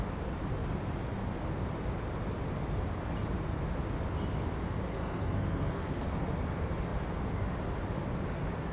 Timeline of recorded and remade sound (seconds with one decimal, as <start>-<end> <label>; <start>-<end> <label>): 0.0-4.9 recorded; 4.9-6.3 remade; 6.3-8.7 recorded